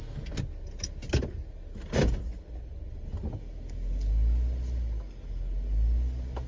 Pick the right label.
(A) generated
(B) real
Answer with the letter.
B